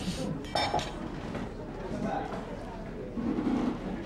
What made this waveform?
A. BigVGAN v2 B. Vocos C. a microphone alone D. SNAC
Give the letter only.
C